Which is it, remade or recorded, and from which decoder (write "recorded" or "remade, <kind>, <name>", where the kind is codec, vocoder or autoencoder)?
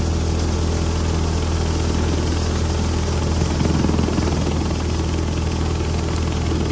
recorded